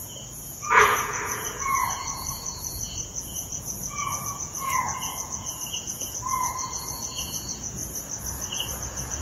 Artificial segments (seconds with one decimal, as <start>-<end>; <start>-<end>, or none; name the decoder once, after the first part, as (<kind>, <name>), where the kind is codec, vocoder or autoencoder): 0.0-7.8 (vocoder, Vocos); 8.5-9.2